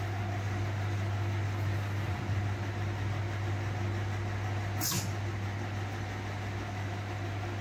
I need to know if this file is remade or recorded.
recorded